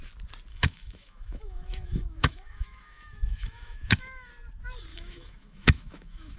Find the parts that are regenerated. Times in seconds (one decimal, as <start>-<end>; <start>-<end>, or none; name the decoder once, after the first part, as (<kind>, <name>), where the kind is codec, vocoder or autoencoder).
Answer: 0.5-4.3 (autoencoder, DAC-VAE); 4.9-6.4